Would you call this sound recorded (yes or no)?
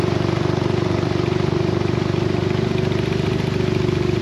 yes